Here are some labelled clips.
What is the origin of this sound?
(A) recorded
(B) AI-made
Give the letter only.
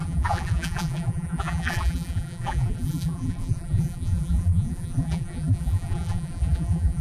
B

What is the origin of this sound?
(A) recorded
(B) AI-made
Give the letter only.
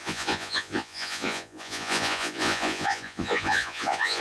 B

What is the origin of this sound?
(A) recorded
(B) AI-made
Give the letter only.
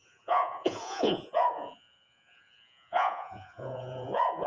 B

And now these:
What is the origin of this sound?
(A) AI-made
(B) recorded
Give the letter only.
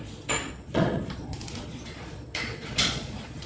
A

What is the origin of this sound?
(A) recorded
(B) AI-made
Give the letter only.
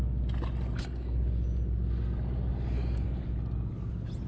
A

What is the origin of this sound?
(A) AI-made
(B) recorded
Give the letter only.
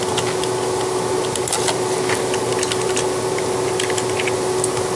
B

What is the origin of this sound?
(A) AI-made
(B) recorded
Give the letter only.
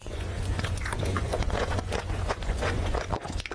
A